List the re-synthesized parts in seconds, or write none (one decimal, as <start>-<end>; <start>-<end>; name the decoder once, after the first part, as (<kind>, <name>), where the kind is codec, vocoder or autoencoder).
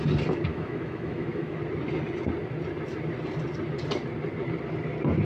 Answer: 0.5-1.6 (autoencoder, DAC-VAE)